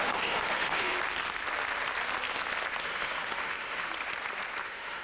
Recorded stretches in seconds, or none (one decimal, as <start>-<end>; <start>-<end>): 0.9-2.8; 3.9-4.6